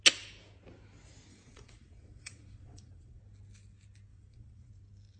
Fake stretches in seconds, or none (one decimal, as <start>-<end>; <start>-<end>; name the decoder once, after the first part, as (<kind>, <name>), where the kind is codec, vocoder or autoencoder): 1.3-3.2 (vocoder, Vocos); 4.1-4.7